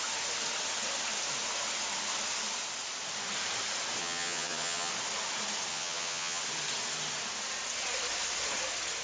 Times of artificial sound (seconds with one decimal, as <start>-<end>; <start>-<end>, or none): 4.0-4.9; 5.7-6.4